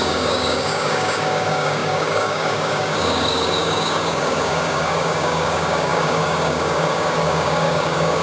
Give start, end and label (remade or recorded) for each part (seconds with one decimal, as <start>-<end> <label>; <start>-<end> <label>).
0.0-8.2 remade